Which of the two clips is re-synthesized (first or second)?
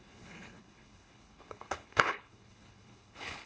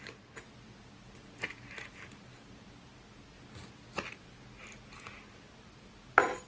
first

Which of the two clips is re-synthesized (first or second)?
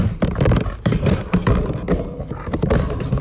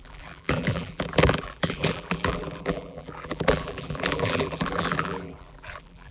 second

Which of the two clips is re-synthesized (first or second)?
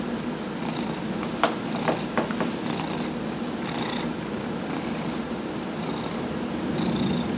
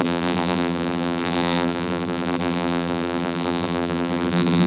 second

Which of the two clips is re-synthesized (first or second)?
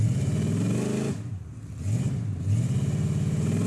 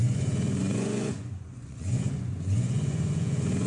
second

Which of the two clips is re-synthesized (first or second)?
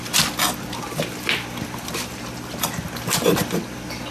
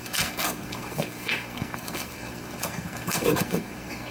second